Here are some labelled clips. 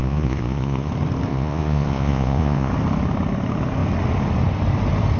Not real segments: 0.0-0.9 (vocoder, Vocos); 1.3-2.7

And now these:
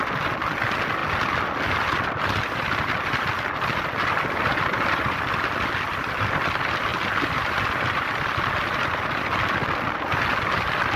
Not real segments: none

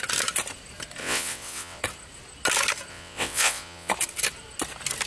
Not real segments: 1.0-1.8 (vocoder, WaveNeXt); 2.9-3.9

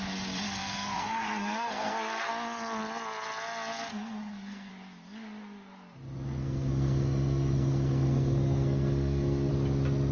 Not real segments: 0.6-2.3 (codec, SNAC); 3.9-4.7; 6.4-9.5

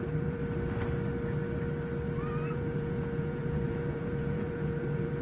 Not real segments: 0.0-0.4 (vocoder, Vocos); 2.5-5.2